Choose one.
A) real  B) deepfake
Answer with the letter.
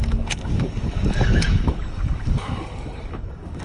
B